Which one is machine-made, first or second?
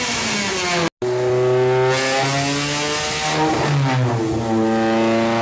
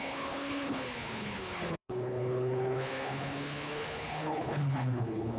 second